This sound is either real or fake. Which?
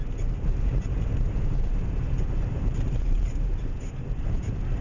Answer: fake